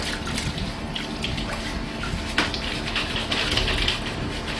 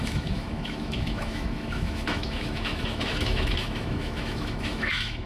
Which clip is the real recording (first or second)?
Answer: first